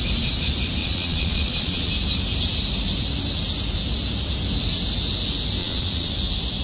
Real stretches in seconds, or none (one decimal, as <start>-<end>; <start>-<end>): 0.0-0.8; 1.9-5.6; 6.1-6.6

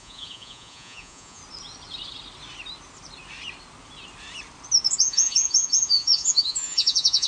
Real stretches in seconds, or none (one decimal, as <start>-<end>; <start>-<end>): 1.4-5.0

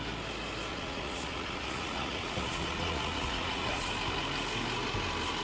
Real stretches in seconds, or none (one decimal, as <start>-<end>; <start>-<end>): 0.0-0.7; 3.9-5.4